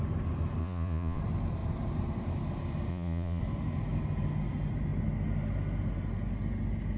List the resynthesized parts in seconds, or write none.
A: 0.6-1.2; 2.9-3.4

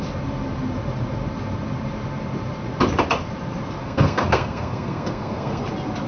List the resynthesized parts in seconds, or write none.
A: 3.8-5.6

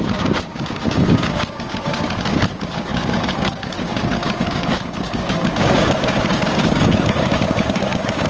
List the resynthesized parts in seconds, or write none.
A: 0.0-8.3

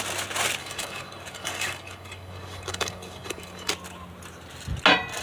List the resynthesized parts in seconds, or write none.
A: 0.6-3.7

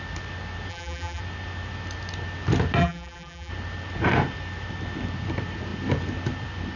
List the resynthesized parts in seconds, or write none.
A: 0.7-1.2; 2.8-3.5